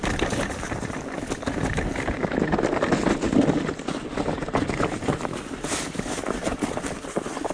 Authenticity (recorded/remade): recorded